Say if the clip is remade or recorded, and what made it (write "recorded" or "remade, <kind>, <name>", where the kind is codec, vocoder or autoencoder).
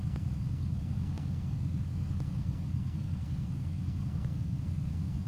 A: remade, codec, SNAC